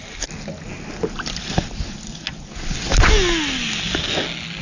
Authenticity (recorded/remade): recorded